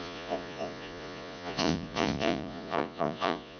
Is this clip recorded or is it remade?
remade